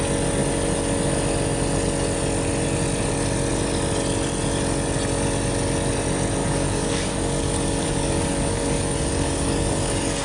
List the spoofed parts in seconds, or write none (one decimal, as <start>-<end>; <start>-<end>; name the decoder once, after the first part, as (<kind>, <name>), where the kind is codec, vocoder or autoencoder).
6.4-10.2 (codec, DAC)